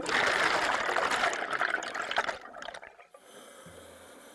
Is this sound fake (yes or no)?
no